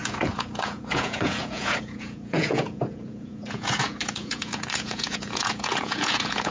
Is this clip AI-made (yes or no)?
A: yes